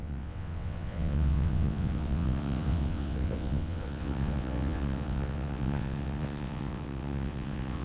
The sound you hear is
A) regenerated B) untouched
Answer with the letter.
A